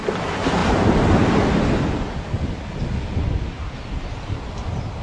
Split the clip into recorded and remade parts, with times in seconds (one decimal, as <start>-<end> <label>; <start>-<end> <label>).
0.0-5.0 recorded